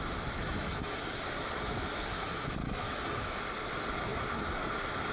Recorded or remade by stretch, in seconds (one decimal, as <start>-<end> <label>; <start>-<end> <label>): 0.0-0.4 recorded; 0.4-1.1 remade; 1.1-2.1 recorded; 2.1-3.4 remade; 3.4-5.1 recorded